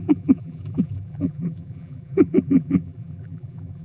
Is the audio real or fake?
fake